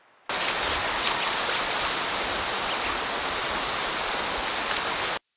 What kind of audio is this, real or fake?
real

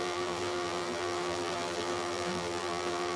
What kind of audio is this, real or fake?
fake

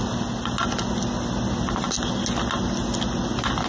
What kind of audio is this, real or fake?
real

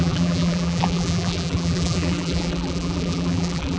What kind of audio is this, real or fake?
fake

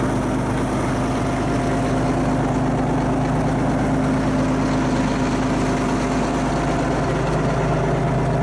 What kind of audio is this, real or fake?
real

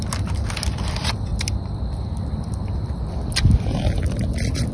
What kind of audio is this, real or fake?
real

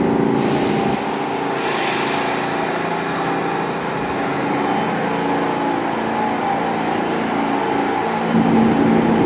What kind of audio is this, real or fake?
real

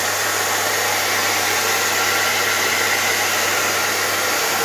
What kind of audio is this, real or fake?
real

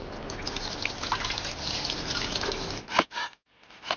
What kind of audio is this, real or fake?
real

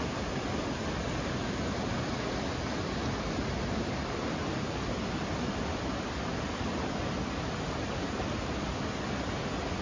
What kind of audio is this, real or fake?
real